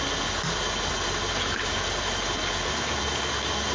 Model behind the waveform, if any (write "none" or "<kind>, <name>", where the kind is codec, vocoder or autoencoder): none